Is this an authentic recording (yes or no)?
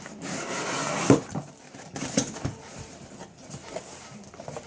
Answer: yes